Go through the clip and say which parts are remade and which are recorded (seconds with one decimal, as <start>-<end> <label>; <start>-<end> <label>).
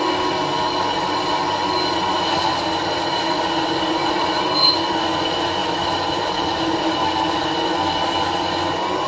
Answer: 0.0-4.0 recorded; 4.0-4.7 remade; 4.7-5.6 recorded; 5.6-7.2 remade; 7.2-9.1 recorded